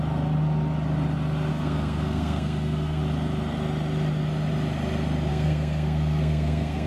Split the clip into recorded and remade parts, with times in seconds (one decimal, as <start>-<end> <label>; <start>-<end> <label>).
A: 0.0-1.5 recorded; 1.5-3.0 remade; 3.0-5.3 recorded; 5.3-6.9 remade